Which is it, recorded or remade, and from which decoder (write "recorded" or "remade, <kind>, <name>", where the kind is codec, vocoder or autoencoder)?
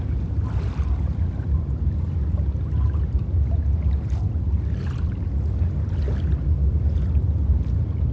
recorded